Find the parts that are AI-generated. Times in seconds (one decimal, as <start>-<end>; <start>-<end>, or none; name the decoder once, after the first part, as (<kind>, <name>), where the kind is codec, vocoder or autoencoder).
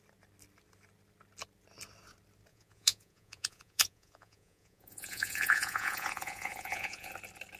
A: 2.5-7.1 (vocoder, Vocos)